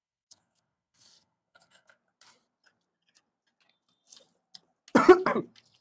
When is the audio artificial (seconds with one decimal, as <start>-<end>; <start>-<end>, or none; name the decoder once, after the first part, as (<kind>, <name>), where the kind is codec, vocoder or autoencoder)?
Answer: 0.0-2.0 (codec, SNAC)